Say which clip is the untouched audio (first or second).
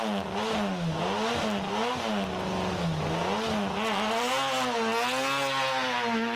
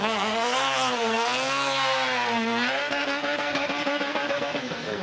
first